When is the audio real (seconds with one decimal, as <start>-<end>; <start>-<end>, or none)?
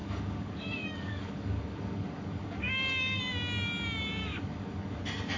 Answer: 3.2-4.2; 5.0-5.4